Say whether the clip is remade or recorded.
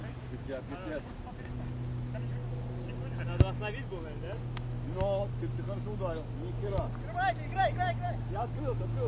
recorded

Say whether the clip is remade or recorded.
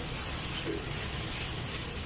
recorded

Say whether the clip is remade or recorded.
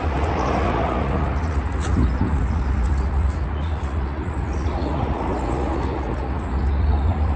remade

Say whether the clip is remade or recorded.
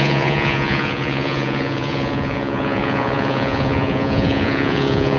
remade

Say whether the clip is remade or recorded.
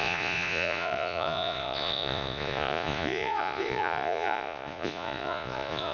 remade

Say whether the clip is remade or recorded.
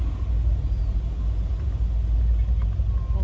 recorded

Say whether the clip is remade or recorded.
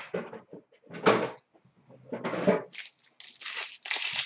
recorded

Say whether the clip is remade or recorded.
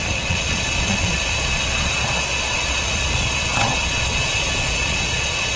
remade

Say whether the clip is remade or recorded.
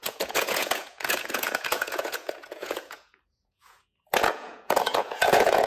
remade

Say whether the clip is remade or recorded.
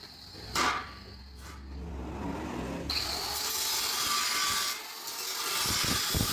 recorded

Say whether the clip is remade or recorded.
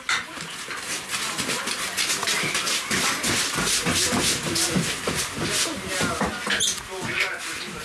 recorded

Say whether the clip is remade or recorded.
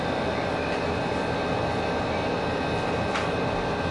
recorded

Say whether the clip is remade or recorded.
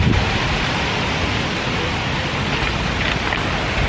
recorded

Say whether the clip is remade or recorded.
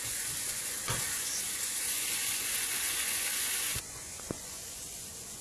remade